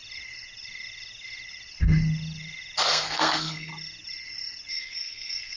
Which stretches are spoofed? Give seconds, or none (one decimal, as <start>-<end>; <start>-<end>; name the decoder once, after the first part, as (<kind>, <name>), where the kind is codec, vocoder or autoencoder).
2.8-3.7 (codec, SNAC); 4.7-5.6